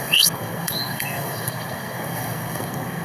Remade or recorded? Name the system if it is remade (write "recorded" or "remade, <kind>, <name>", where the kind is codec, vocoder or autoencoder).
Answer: remade, codec, SNAC